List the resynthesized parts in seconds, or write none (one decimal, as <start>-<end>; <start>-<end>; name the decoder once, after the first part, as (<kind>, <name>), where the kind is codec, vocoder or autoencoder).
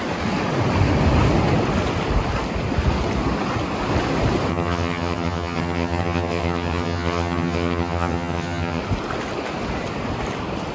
4.5-8.8 (vocoder, HiFi-GAN)